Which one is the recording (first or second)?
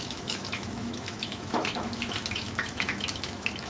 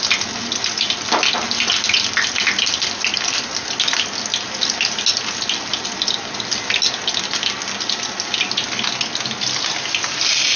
second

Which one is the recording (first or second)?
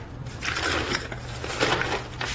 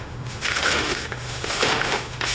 first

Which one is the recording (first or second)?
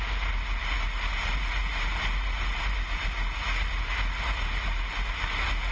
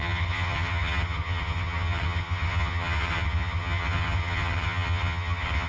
first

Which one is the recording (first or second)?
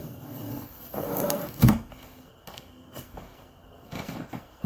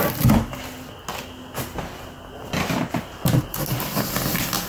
second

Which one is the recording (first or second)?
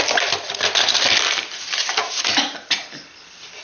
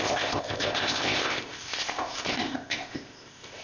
first